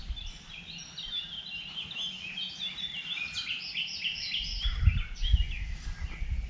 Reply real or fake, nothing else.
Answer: real